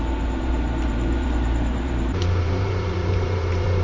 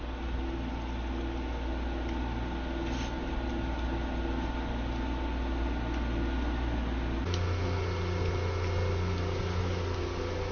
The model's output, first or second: first